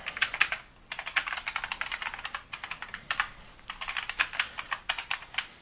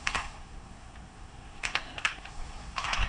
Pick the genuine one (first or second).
first